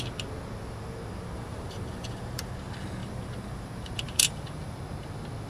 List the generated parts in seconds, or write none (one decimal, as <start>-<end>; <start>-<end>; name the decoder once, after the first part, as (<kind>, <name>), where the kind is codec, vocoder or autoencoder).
1.5-2.5 (vocoder, BigVGAN v2); 3.0-4.8